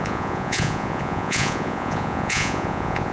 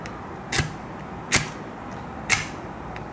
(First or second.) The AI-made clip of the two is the first